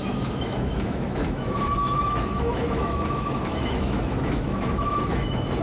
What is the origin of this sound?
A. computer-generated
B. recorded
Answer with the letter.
A